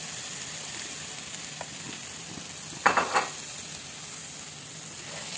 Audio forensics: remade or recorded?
recorded